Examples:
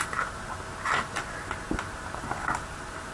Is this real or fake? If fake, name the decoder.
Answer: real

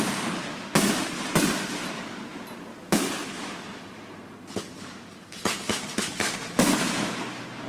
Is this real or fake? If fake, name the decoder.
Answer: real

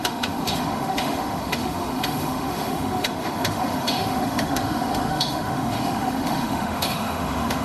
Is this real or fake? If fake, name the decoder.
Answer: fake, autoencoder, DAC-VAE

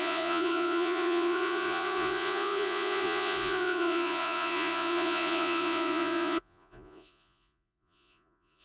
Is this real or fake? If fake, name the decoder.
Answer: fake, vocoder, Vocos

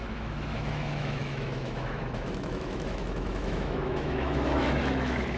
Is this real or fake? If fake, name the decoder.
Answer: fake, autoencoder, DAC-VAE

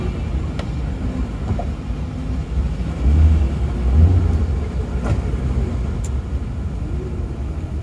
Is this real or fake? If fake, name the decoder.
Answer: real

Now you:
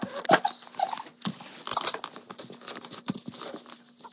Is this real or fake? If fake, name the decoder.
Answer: real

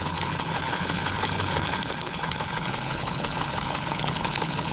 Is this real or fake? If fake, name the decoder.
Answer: fake, codec, HILCodec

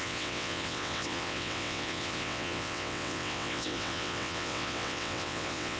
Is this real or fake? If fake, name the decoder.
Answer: fake, vocoder, WaveNeXt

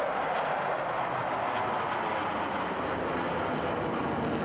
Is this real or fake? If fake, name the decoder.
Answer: real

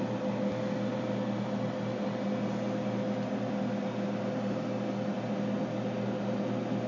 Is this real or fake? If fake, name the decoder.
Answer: real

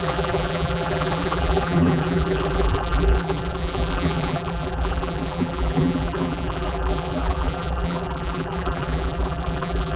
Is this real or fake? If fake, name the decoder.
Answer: fake, vocoder, BigVGAN v2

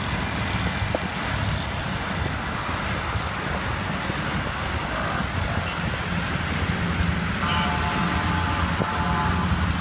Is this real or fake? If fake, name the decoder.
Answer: real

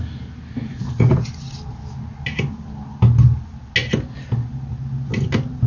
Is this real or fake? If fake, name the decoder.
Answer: real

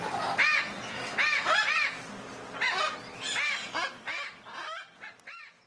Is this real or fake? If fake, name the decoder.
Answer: real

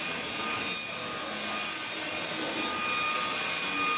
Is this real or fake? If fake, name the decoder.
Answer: real